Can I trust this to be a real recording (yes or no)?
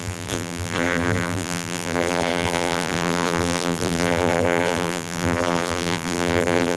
no